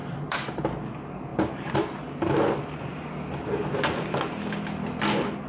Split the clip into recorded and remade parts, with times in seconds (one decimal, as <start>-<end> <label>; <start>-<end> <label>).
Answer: 0.0-0.6 remade; 0.6-1.3 recorded; 1.3-2.0 remade; 2.0-5.5 recorded